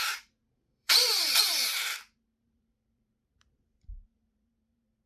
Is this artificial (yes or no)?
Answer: yes